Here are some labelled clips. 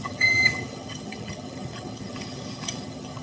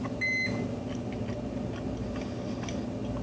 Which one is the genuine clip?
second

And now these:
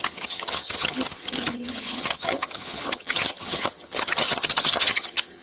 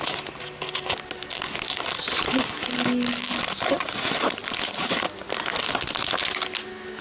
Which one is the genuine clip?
second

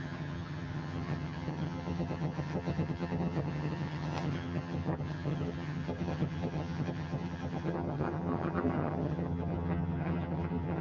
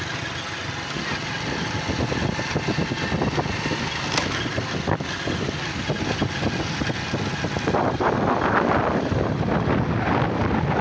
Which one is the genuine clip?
second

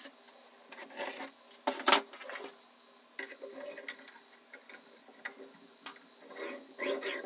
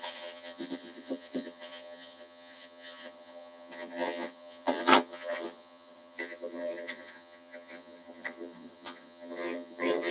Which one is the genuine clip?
first